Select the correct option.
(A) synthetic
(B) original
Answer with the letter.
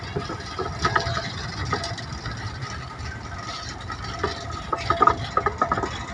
B